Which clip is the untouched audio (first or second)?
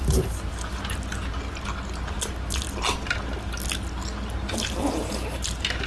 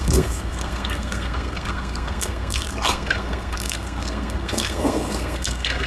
first